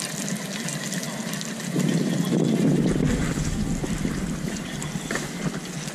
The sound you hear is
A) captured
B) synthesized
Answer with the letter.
A